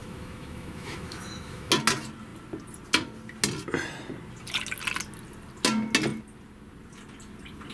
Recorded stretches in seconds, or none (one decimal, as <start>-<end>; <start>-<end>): 1.7-7.7